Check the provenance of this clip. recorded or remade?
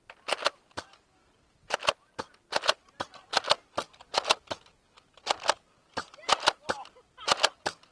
recorded